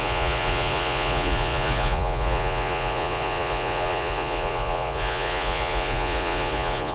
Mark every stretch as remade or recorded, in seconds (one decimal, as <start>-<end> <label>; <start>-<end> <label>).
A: 0.0-6.9 remade